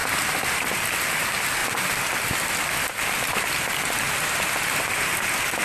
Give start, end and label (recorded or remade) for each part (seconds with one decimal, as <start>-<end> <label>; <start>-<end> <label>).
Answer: 0.0-1.6 recorded; 1.6-4.4 remade; 4.4-5.6 recorded